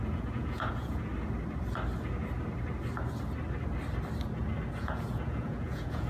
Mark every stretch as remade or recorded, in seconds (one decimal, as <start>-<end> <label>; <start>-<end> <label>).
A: 0.0-1.1 remade; 1.1-4.8 recorded; 4.8-6.1 remade